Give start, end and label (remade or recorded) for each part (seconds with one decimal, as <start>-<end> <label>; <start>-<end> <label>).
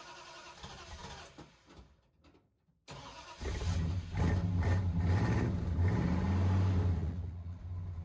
0.0-7.0 recorded; 7.0-7.6 remade; 7.6-8.0 recorded